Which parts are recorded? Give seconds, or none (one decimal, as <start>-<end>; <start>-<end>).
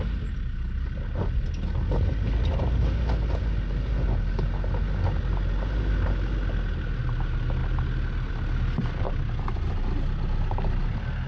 0.0-11.3